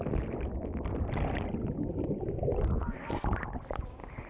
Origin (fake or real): real